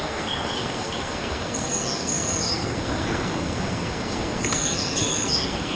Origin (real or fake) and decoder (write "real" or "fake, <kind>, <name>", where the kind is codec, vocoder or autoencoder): fake, codec, SNAC